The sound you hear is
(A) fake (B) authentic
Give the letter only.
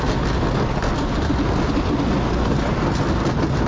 B